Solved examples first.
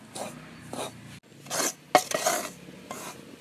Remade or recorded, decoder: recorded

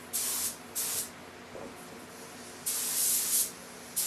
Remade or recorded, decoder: recorded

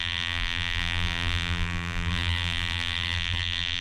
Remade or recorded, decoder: remade, vocoder, BigVGAN v2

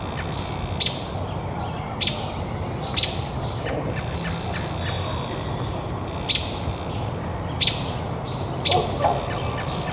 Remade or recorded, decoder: recorded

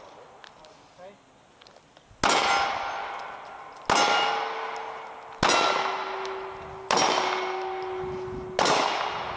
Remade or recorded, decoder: recorded